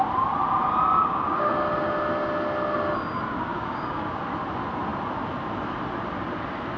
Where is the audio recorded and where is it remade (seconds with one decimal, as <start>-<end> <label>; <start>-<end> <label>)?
0.0-1.0 recorded; 1.0-1.5 remade; 1.5-3.5 recorded; 3.5-4.2 remade; 4.2-6.8 recorded